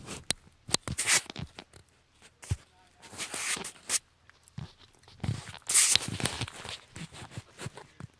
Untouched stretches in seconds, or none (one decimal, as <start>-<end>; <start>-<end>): 0.0-8.2